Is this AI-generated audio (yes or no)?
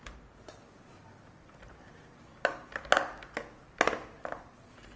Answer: no